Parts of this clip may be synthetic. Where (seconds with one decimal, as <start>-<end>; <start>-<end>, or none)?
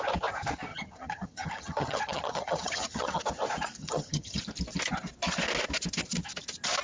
0.7-3.2; 3.8-4.4